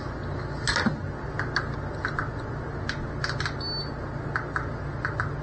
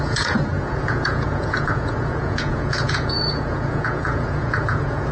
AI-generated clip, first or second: second